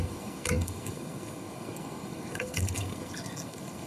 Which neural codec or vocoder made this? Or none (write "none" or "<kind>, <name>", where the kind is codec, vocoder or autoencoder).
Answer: codec, SNAC